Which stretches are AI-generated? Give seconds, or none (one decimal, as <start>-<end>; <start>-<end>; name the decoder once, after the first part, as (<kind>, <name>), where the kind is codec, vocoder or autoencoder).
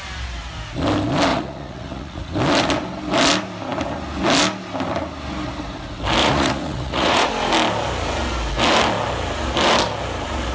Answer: 1.3-2.2 (vocoder, Vocos); 6.2-7.3